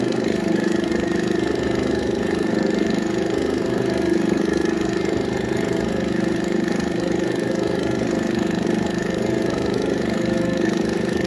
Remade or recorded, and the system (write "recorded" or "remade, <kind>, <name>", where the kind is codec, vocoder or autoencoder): remade, codec, SNAC